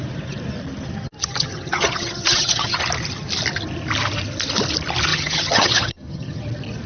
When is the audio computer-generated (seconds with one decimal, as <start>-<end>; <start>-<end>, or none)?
1.2-2.8; 5.1-6.4